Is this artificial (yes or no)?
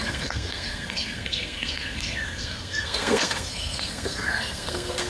yes